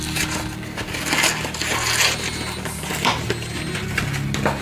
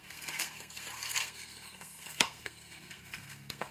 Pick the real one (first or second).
first